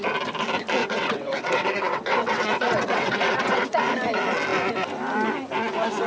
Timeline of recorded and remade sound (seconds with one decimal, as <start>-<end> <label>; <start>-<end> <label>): 0.0-0.8 recorded; 0.8-3.8 remade; 3.8-6.1 recorded